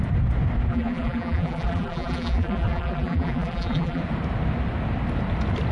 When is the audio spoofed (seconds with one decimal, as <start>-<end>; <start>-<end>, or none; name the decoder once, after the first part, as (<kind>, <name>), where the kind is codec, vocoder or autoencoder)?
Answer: 0.7-4.0 (vocoder, BigVGAN v2)